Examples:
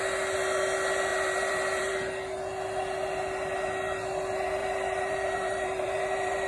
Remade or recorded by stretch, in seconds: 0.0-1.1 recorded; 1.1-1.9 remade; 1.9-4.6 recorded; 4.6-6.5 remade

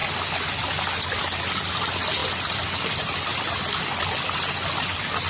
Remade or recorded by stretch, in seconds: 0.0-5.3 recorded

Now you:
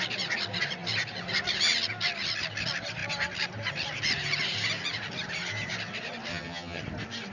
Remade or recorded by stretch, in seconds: 0.0-6.3 recorded; 6.3-6.8 remade; 6.8-7.3 recorded

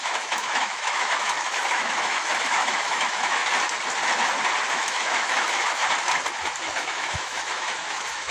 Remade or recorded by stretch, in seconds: 0.0-3.4 remade; 3.4-4.7 recorded; 4.7-5.8 remade; 5.8-6.6 recorded; 6.6-8.3 remade

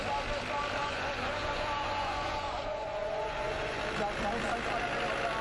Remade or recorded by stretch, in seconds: 0.0-0.8 recorded; 0.8-3.8 remade; 3.8-5.4 recorded

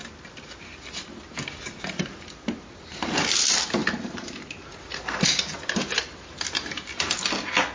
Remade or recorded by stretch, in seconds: 0.0-7.7 recorded

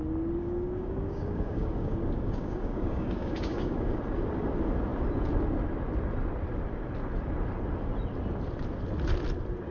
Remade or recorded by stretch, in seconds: 0.0-0.4 recorded; 0.4-4.0 remade; 4.0-9.7 recorded